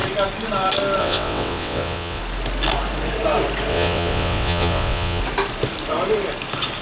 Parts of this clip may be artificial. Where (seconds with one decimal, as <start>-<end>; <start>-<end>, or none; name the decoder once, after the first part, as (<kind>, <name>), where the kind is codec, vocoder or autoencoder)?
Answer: 1.0-2.2 (vocoder, WaveNeXt); 3.7-5.2